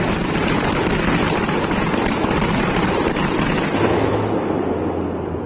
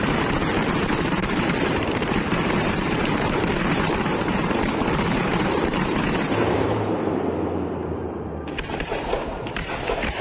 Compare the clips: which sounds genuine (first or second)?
first